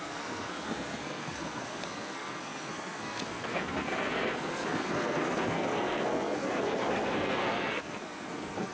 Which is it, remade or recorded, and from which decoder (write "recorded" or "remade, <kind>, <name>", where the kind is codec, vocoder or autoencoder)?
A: remade, codec, SNAC